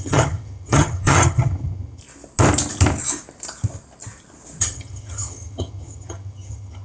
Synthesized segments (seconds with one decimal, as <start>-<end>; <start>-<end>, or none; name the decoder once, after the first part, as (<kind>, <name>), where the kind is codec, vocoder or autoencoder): 0.0-2.0 (vocoder, HiFi-GAN); 4.6-6.8